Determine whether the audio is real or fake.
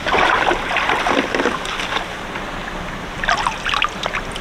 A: real